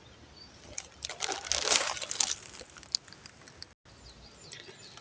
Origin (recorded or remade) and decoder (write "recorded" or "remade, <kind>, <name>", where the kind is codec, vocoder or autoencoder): recorded